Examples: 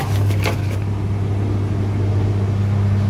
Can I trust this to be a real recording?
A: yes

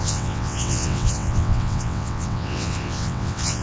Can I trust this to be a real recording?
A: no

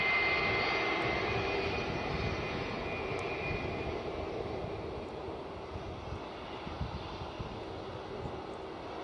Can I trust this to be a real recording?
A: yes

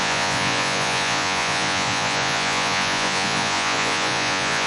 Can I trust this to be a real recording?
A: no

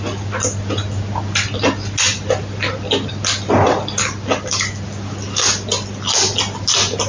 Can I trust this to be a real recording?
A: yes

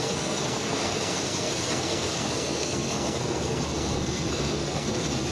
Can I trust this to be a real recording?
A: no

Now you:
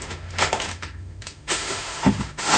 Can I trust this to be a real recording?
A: no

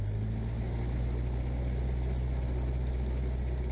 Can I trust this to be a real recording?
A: yes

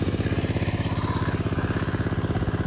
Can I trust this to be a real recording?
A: yes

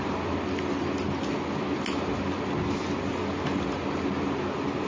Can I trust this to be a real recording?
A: yes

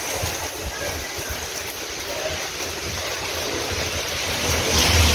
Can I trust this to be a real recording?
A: yes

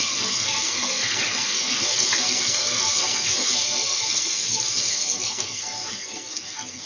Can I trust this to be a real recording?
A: no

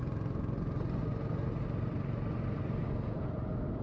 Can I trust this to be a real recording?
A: yes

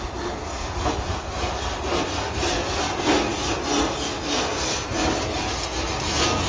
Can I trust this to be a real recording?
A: yes